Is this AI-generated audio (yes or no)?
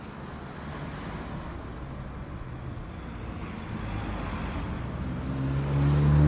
no